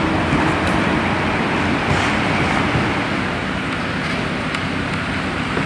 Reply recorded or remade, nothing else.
recorded